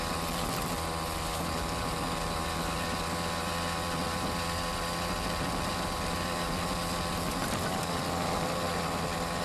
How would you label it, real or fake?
real